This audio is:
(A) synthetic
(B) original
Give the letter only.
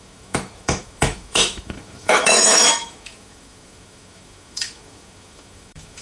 A